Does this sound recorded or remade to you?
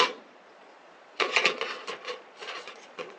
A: remade